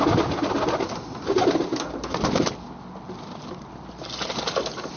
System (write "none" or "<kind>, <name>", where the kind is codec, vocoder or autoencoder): none